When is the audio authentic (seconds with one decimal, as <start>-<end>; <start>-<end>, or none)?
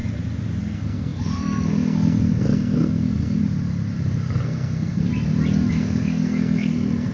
0.0-0.6; 3.4-4.2; 5.1-5.7